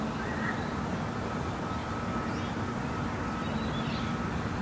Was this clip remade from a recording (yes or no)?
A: no